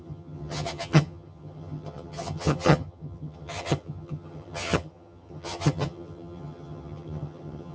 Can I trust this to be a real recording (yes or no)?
no